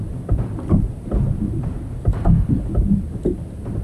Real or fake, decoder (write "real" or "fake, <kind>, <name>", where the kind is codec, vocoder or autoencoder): real